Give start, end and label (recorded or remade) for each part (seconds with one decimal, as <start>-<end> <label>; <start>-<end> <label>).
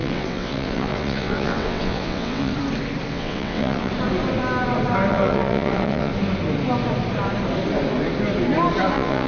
0.0-2.5 remade; 2.5-3.1 recorded; 3.1-3.9 remade; 3.9-5.1 recorded; 5.1-6.1 remade; 6.1-8.9 recorded; 8.9-9.3 remade